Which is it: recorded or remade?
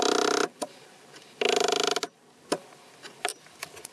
recorded